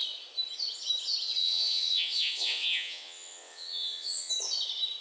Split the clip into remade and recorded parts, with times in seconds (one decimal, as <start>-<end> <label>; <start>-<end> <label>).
0.0-1.4 recorded; 1.4-4.3 remade; 4.3-5.0 recorded